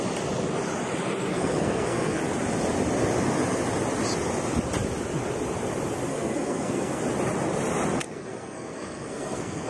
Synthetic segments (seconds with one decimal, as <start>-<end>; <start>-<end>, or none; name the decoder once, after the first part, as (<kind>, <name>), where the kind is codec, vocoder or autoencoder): 1.2-2.2 (codec, SNAC); 6.1-7.0; 8.0-9.7